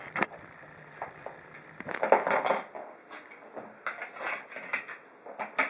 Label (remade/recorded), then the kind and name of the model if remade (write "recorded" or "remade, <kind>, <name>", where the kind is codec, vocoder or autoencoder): recorded